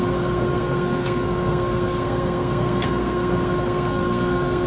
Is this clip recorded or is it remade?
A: remade